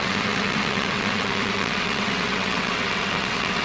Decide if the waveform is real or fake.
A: fake